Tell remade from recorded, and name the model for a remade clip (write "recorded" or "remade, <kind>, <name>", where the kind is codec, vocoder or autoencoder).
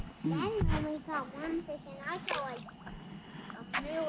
recorded